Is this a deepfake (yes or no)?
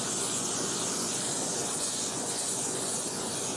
yes